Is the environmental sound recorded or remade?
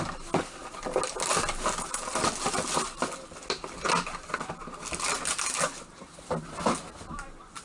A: recorded